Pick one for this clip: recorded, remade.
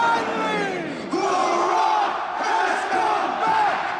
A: recorded